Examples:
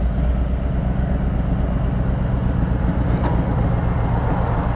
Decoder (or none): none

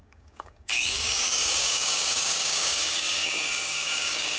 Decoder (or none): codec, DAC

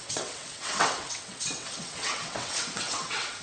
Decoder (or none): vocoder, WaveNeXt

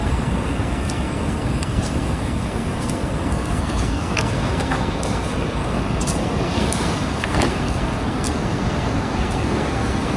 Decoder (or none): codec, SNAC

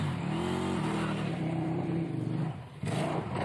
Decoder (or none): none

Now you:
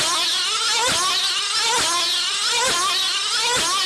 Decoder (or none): none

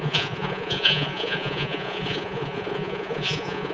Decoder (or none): vocoder, Vocos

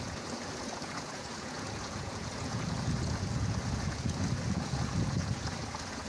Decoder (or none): vocoder, Vocos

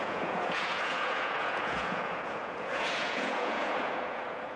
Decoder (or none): vocoder, Vocos